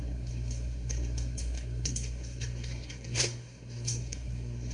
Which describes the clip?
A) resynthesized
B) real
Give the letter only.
A